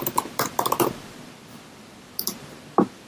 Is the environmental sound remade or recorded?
remade